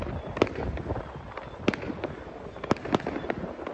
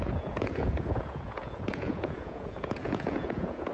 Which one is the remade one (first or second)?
second